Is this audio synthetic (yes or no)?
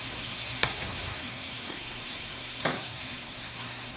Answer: yes